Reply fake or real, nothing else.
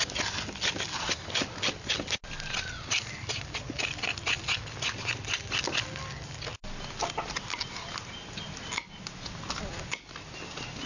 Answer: real